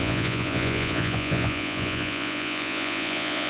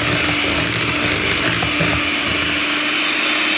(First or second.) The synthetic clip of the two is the first